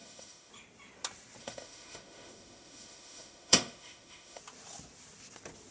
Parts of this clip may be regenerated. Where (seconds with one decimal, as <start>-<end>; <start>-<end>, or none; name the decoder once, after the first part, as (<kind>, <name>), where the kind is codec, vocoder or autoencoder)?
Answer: 0.0-0.5 (autoencoder, DAC-VAE); 1.4-4.4